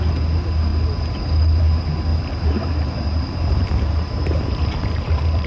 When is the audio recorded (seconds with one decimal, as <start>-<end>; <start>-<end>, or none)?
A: 0.0-2.1

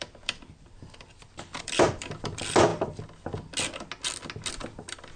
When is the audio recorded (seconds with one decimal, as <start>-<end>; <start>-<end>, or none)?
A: 2.7-4.5

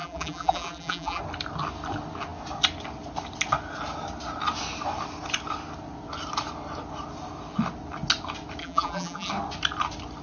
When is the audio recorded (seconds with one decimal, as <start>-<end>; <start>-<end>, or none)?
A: 1.2-8.6; 9.3-10.2